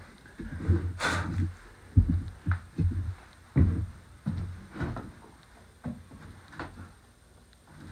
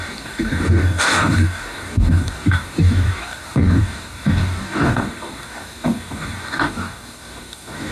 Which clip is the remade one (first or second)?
second